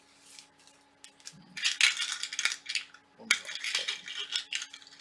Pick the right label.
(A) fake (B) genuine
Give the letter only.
B